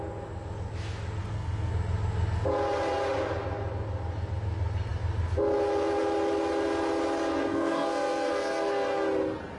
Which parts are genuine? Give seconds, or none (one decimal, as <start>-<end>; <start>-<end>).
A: 0.0-1.2; 1.7-7.4; 8.3-9.6